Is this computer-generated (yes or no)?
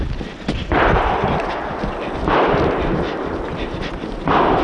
yes